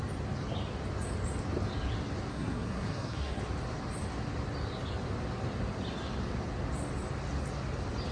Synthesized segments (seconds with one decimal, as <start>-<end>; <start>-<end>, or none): 2.3-3.4